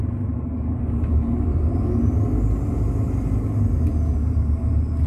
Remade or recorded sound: recorded